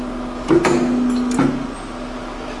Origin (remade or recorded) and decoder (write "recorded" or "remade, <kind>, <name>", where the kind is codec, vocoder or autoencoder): recorded